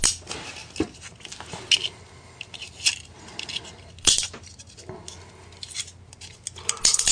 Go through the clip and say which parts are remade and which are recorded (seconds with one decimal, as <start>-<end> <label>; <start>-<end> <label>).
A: 0.0-7.1 recorded